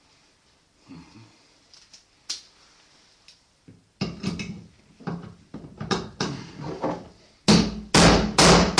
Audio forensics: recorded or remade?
recorded